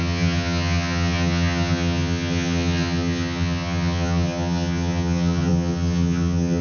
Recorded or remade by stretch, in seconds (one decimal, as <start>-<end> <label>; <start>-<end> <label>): 0.0-6.6 remade